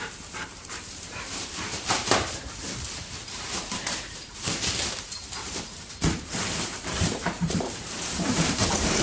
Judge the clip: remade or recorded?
remade